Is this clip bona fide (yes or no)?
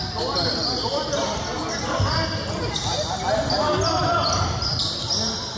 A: yes